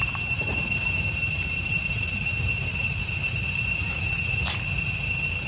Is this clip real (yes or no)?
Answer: no